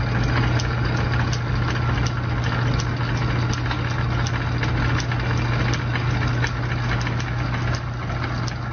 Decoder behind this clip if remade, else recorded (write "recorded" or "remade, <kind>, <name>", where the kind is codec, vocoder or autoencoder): recorded